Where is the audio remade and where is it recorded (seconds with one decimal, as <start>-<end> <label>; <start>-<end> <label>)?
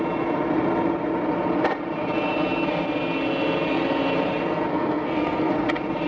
0.0-4.7 recorded; 4.7-5.5 remade; 5.5-6.1 recorded